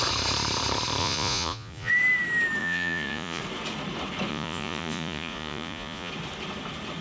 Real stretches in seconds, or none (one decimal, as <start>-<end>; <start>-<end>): 0.0-1.0; 1.9-2.6; 3.4-4.3; 6.1-7.0